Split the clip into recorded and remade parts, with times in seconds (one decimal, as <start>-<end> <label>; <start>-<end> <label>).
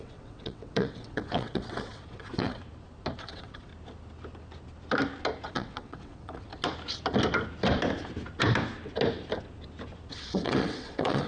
0.0-2.6 remade; 2.6-3.2 recorded; 3.2-3.7 remade; 3.7-5.5 recorded; 5.5-6.5 remade; 6.5-10.1 recorded; 10.1-11.3 remade